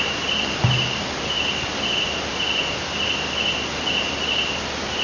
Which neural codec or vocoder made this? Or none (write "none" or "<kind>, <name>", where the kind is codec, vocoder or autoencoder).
none